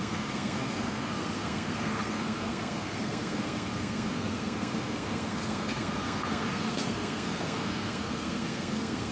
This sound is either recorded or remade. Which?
remade